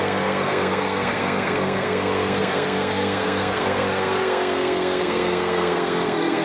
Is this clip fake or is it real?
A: fake